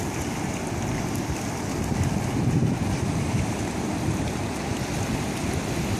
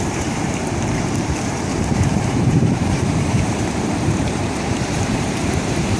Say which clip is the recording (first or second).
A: first